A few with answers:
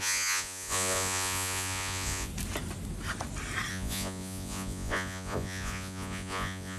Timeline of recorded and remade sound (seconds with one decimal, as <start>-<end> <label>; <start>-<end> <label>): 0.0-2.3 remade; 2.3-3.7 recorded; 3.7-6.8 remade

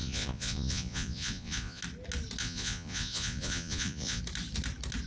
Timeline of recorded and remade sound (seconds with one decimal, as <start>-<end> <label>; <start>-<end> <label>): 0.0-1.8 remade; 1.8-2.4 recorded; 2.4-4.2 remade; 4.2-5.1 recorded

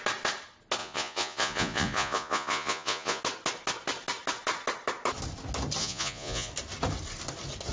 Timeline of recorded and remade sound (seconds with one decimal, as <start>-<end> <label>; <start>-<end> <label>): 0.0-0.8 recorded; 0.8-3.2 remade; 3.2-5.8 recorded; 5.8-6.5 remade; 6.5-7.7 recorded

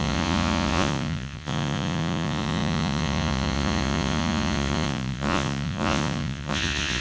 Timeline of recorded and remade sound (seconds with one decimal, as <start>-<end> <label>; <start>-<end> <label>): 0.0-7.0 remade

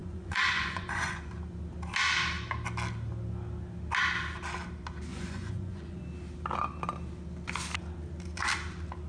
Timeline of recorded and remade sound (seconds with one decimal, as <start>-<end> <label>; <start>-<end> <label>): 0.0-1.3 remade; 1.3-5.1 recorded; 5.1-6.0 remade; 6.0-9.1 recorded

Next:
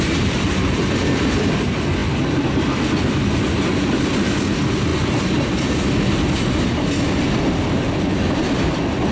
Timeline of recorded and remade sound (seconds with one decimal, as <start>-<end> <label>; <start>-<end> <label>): 0.0-9.1 recorded

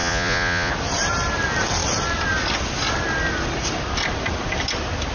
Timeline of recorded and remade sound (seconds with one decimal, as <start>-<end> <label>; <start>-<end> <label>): 0.0-0.7 remade; 0.7-5.1 recorded